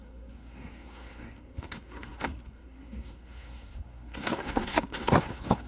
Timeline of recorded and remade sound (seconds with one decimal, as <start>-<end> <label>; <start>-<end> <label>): 0.0-5.7 remade